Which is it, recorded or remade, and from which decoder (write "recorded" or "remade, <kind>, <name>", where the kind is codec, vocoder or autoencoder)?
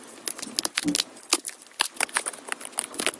recorded